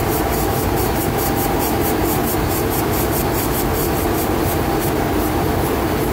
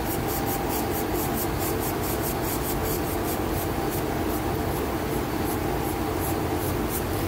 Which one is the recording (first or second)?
second